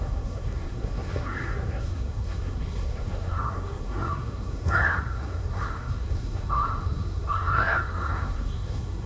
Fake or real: fake